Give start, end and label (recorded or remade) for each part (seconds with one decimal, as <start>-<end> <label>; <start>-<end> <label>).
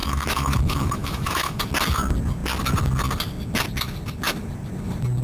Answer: 0.0-1.6 remade; 1.6-5.2 recorded